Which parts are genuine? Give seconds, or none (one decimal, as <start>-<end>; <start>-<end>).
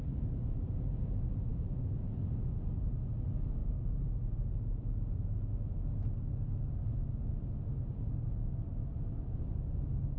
0.0-10.2